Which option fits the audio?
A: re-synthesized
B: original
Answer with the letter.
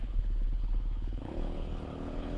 A